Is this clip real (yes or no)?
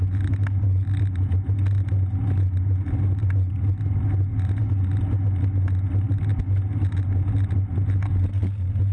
yes